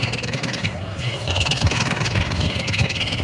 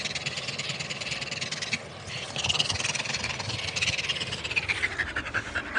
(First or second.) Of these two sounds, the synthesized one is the first